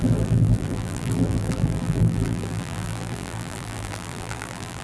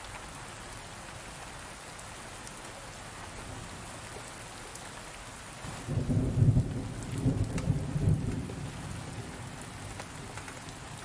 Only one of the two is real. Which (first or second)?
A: second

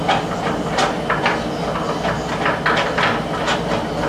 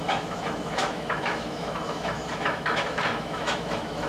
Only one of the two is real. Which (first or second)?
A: first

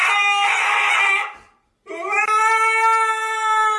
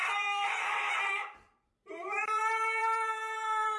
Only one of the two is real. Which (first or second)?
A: first